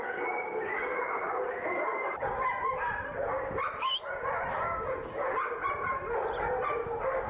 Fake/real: real